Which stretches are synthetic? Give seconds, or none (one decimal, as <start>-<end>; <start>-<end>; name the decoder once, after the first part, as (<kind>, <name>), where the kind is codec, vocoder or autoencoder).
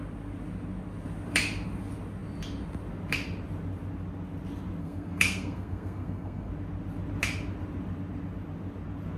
4.8-6.5 (codec, SNAC)